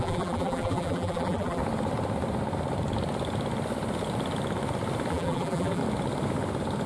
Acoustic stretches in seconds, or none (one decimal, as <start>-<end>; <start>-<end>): 1.6-5.1; 5.8-6.9